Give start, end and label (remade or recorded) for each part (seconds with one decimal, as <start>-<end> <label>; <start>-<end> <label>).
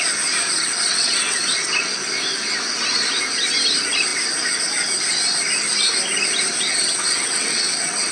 0.0-0.9 recorded; 0.9-1.9 remade; 1.9-6.7 recorded; 6.7-8.1 remade